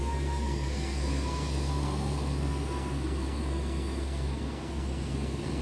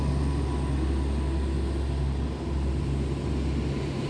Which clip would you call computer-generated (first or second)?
first